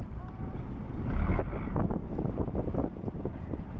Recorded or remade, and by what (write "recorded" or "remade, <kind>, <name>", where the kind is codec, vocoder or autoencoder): recorded